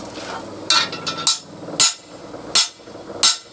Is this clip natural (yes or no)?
yes